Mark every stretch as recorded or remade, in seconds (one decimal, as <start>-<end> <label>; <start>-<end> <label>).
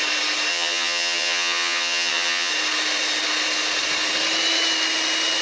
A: 0.0-0.5 recorded; 0.5-2.5 remade; 2.5-5.4 recorded